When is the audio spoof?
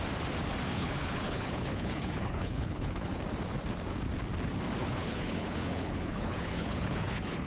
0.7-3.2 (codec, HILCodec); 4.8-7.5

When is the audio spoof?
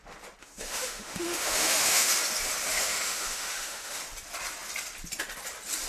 0.4-2.1 (autoencoder, DAC-VAE); 2.7-4.0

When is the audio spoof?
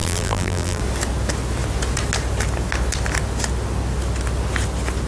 0.0-0.8 (vocoder, BigVGAN v2)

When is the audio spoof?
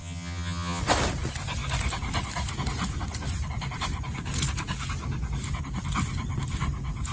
0.0-0.8 (vocoder, HiFi-GAN)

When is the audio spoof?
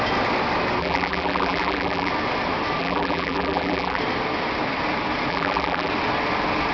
0.8-2.1 (vocoder, BigVGAN v2); 2.8-4.0; 5.3-5.9